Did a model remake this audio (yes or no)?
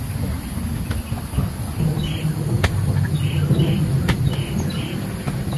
no